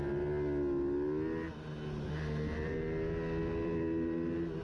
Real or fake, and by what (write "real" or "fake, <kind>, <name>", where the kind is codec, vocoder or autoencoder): real